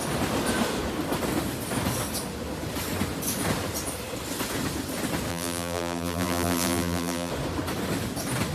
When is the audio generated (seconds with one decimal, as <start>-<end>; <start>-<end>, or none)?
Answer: 5.3-7.3